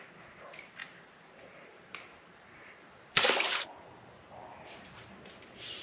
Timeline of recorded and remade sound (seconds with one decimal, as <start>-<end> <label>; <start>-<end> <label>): 0.0-0.8 recorded; 0.8-4.3 remade; 4.3-5.8 recorded